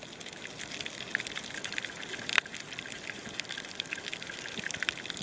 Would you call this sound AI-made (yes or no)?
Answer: no